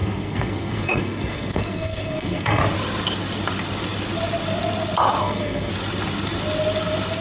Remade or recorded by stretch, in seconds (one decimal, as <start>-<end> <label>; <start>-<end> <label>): 0.0-2.6 remade; 2.6-5.2 recorded; 5.2-5.7 remade; 5.7-7.2 recorded